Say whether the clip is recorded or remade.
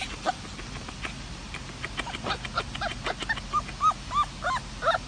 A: recorded